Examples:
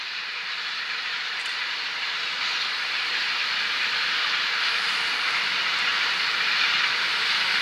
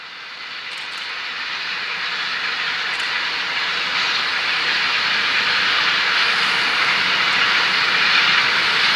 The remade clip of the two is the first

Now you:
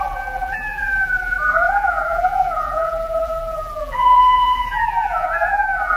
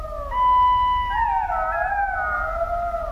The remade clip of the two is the first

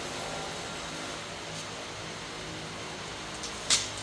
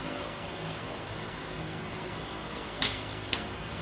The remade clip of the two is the second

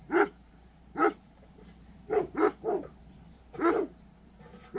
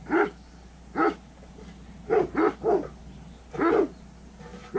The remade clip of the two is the first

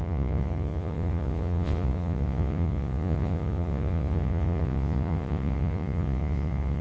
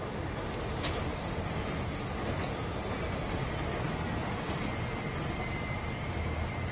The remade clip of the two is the first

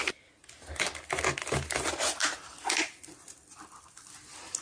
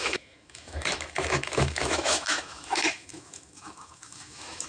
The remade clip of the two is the second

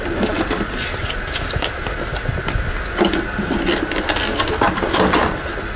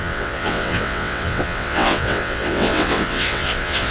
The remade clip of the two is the second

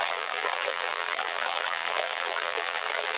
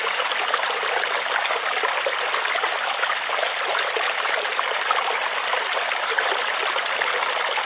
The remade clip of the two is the first